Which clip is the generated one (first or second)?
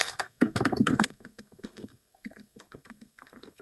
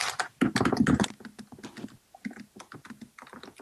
first